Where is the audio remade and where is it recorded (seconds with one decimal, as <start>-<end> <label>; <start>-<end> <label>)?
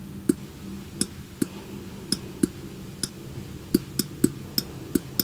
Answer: 0.0-5.2 recorded